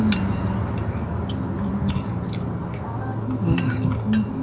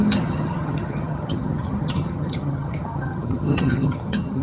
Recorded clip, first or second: first